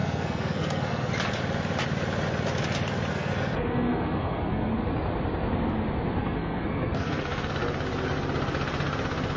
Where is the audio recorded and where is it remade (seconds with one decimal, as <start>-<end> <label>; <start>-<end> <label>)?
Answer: 0.0-1.1 remade; 1.1-3.1 recorded; 3.1-4.7 remade; 4.7-6.2 recorded; 6.2-7.5 remade; 7.5-9.4 recorded